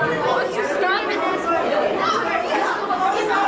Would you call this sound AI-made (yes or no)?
no